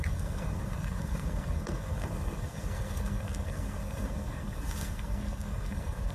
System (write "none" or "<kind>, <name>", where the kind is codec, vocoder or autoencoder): codec, SNAC